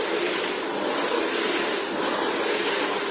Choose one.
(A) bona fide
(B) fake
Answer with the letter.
A